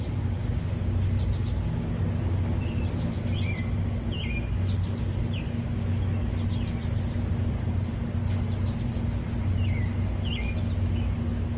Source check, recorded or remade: recorded